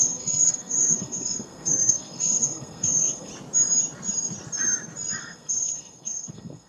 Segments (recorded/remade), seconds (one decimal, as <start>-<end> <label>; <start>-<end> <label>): 0.0-3.3 remade; 3.3-5.2 recorded; 5.2-6.7 remade